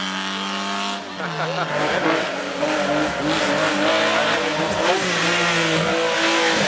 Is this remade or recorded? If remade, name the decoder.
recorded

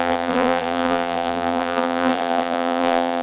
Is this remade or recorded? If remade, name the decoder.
remade, vocoder, BigVGAN v2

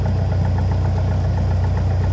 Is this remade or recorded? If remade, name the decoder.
recorded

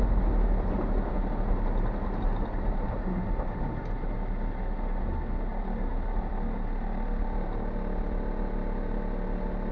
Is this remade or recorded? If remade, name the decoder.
recorded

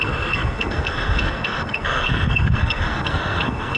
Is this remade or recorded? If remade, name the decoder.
remade, codec, SNAC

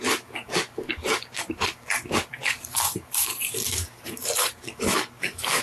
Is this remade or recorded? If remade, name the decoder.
remade, codec, DAC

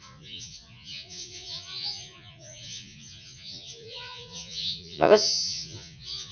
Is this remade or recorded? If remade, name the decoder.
remade, vocoder, Vocos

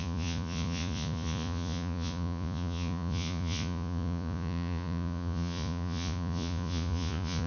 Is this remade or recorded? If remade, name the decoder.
remade, vocoder, Vocos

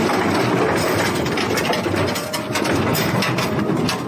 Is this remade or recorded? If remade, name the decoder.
recorded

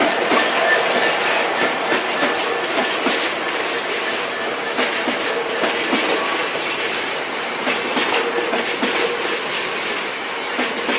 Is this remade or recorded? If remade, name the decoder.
recorded